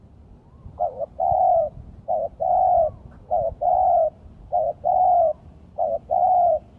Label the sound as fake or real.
real